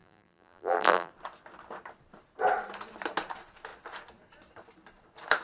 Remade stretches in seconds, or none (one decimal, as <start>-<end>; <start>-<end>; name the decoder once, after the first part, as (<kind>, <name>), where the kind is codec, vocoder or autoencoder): 0.0-1.1 (vocoder, BigVGAN v2)